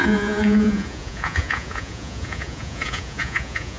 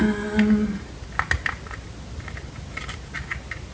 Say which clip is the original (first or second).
second